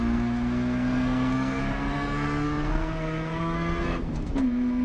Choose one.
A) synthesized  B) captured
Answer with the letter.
A